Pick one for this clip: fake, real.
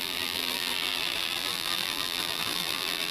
fake